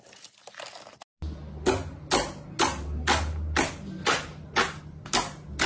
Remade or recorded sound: recorded